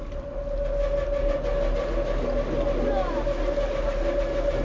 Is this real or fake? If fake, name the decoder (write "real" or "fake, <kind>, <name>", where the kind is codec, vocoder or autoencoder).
real